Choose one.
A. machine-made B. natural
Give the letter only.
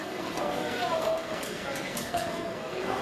A